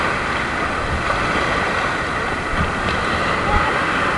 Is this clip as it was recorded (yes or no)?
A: yes